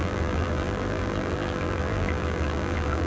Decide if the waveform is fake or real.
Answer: fake